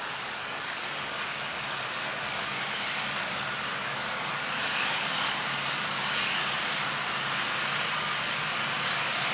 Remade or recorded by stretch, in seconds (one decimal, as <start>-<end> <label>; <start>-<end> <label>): 0.0-6.4 remade; 6.4-7.9 recorded; 7.9-9.3 remade